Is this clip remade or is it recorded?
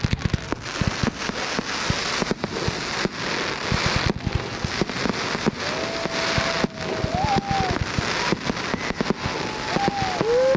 recorded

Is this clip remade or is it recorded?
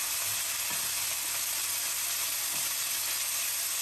recorded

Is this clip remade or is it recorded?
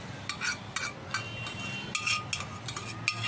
recorded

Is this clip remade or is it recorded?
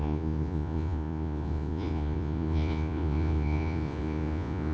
remade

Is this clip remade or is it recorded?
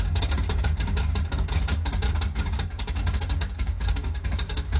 remade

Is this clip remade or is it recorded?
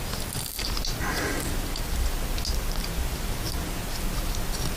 recorded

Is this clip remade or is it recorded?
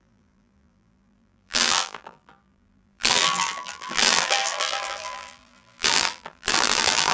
remade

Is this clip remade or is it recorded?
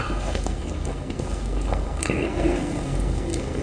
remade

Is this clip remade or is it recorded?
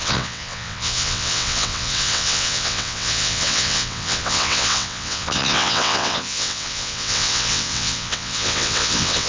remade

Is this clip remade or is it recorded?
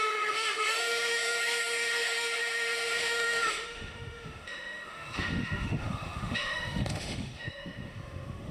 remade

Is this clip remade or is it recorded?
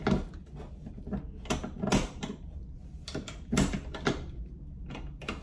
recorded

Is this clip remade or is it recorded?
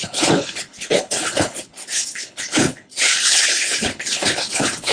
remade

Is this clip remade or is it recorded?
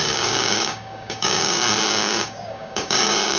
remade